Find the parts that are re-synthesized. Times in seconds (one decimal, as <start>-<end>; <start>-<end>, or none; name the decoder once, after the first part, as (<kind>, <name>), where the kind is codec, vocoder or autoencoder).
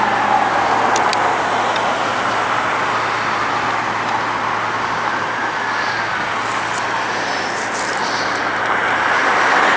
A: none